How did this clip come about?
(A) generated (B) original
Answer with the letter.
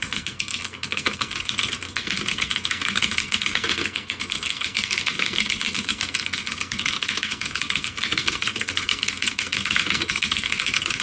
A